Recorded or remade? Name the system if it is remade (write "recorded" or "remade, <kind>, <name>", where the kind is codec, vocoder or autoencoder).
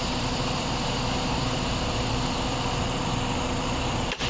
remade, vocoder, BigVGAN v2